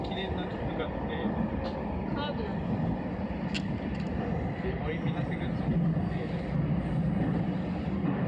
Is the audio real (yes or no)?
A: yes